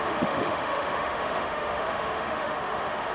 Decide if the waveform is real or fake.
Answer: fake